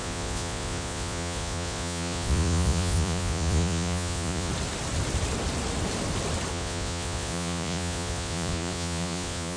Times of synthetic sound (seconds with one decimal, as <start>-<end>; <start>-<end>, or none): 0.0-4.5; 6.5-9.6